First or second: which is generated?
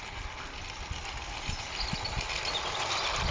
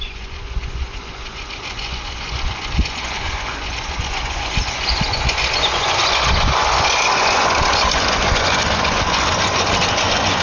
second